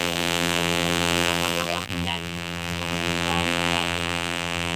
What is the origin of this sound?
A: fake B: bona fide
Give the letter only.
A